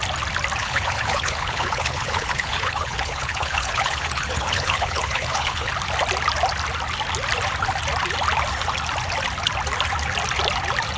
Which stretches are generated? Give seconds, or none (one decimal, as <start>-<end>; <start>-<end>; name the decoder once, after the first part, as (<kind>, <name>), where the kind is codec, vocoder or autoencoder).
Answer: 0.6-5.7 (codec, HILCodec)